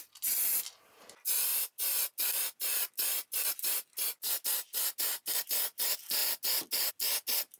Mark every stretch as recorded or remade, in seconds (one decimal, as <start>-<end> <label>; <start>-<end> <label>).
0.0-7.6 recorded